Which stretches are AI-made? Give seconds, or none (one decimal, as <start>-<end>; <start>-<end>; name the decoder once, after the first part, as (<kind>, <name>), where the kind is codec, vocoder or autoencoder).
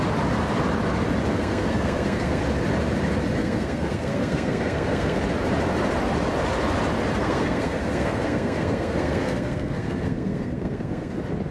1.3-2.4 (codec, SNAC); 3.4-5.2; 7.2-11.1